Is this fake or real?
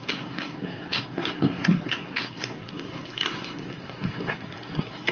fake